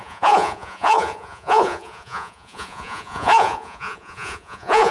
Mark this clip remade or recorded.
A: remade